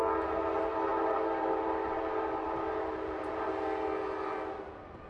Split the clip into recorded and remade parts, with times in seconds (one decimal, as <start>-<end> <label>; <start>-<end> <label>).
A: 0.0-0.9 recorded; 0.9-3.5 remade; 3.5-5.1 recorded